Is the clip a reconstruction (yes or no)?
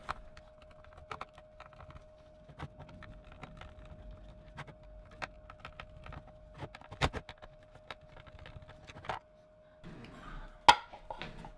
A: no